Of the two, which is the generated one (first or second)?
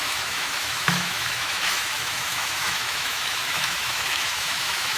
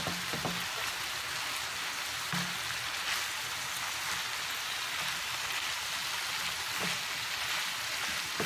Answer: first